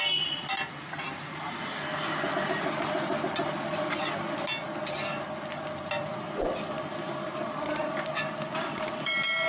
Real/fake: real